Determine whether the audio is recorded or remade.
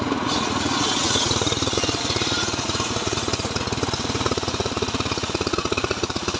remade